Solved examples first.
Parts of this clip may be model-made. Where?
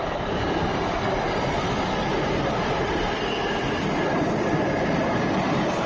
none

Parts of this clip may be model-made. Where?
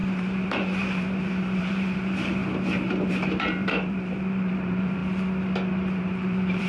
0.0-2.4 (vocoder, BigVGAN v2); 3.1-5.0; 6.0-6.7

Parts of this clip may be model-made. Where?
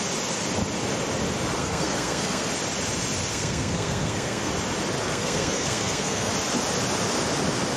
1.6-2.5 (codec, SNAC); 3.3-4.5; 5.0-6.3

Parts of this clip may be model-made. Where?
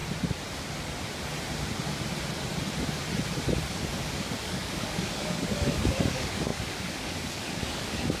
3.6-8.2 (codec, DAC)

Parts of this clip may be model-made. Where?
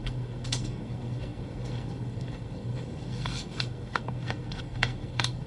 0.0-5.5 (codec, SNAC)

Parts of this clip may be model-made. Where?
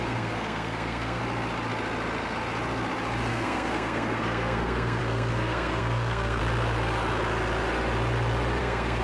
0.0-1.2 (codec, SNAC); 3.3-6.4; 8.6-9.0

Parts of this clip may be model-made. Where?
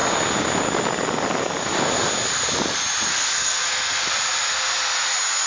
3.1-4.0 (codec, SNAC)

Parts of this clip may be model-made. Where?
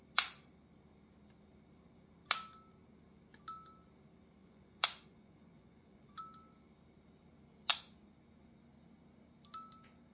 4.4-6.2 (vocoder, Vocos)